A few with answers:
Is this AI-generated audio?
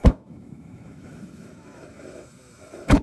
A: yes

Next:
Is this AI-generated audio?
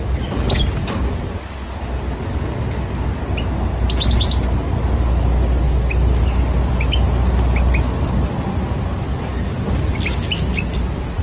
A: no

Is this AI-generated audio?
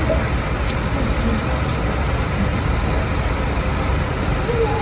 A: no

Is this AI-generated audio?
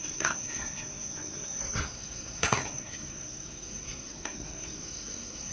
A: yes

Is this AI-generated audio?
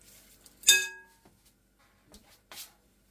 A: no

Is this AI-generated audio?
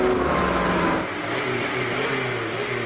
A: no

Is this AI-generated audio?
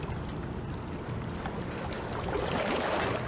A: no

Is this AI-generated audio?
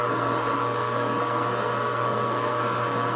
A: yes